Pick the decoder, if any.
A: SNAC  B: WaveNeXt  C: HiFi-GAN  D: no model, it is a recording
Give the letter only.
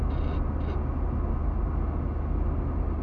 D